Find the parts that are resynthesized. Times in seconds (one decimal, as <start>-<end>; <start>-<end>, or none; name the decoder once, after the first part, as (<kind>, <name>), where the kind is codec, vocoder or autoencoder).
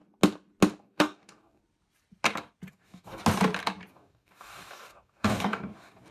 0.8-1.6 (codec, DAC); 2.7-3.2; 3.9-6.1